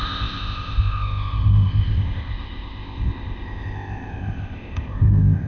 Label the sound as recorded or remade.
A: remade